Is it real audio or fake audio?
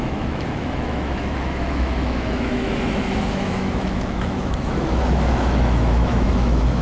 fake